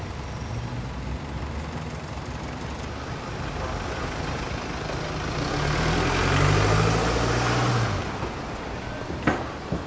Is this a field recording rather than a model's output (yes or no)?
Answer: yes